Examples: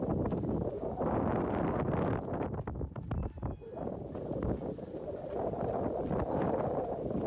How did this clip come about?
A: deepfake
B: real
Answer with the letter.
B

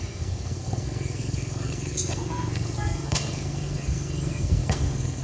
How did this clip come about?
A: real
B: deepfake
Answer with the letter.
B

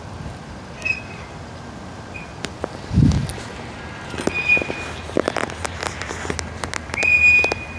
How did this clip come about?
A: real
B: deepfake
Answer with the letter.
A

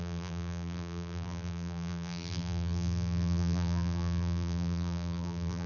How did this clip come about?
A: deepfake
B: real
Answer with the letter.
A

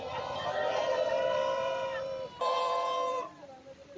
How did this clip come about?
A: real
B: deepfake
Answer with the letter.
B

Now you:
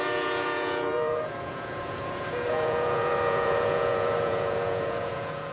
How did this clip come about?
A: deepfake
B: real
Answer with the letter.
A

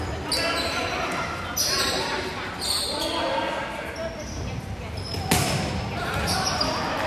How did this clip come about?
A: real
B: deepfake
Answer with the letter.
A